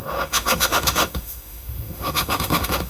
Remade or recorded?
remade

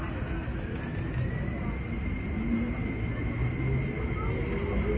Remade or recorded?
recorded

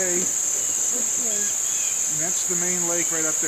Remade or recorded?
recorded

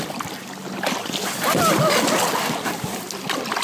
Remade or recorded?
recorded